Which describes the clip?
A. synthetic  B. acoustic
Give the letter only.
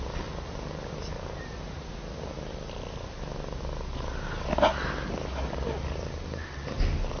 B